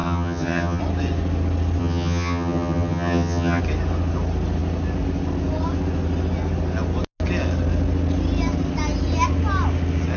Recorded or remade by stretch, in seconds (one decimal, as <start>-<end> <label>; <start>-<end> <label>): 0.0-0.8 remade; 0.8-1.8 recorded; 1.8-3.6 remade; 3.6-10.2 recorded